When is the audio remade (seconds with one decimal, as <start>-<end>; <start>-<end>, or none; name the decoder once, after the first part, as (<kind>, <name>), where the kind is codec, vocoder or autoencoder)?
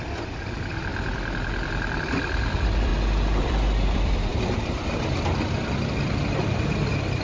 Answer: 0.0-2.9 (vocoder, BigVGAN v2); 3.4-7.2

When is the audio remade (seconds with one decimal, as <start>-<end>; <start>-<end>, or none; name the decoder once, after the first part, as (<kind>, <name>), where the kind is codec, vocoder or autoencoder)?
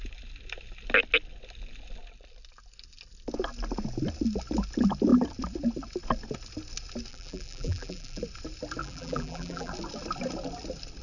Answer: 7.1-8.2 (vocoder, BigVGAN v2); 8.8-9.7